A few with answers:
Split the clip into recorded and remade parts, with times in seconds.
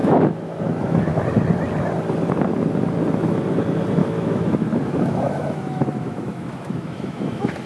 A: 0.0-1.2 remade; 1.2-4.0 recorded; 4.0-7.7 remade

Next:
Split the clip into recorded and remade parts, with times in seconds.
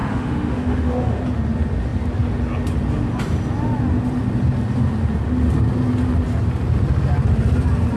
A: 0.0-1.2 remade; 1.2-8.0 recorded